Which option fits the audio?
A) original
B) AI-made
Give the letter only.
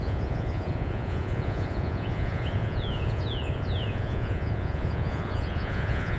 B